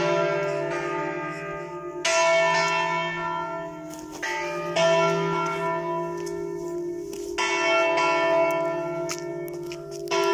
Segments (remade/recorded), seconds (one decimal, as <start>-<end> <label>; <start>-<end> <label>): 0.0-10.3 recorded